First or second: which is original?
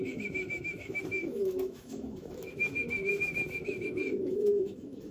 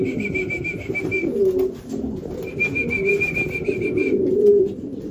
second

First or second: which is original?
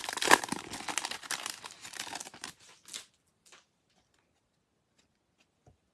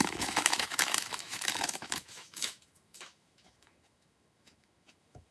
first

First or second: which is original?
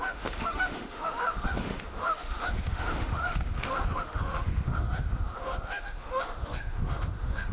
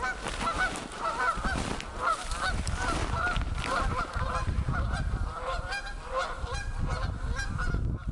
second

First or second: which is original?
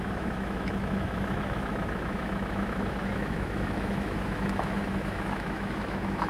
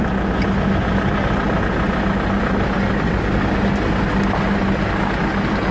second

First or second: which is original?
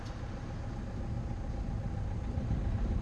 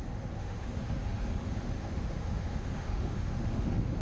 first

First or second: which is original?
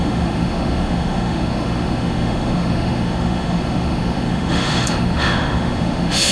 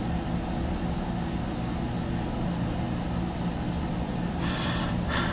second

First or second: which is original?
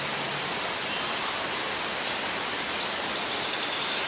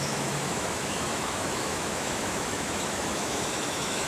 first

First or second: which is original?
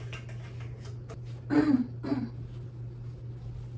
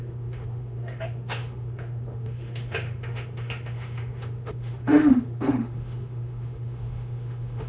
first